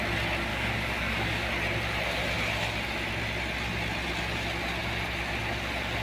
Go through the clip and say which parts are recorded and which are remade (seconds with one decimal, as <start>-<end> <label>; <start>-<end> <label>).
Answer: 0.0-0.5 recorded; 0.5-1.5 remade; 1.5-6.0 recorded